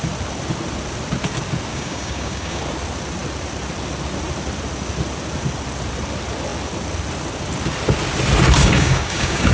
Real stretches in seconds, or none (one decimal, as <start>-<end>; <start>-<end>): 0.0-1.7; 2.6-8.6